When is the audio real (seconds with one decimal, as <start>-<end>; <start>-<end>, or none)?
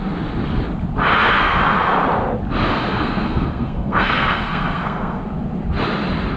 0.0-1.1; 1.6-2.7; 5.2-6.4